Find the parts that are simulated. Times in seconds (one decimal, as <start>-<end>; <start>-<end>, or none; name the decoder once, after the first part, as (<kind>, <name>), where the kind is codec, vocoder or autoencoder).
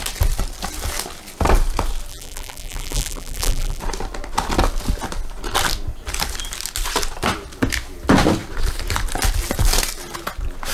2.1-3.8 (vocoder, BigVGAN v2)